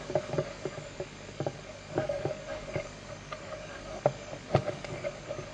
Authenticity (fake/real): fake